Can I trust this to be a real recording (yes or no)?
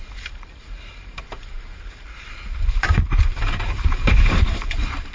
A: no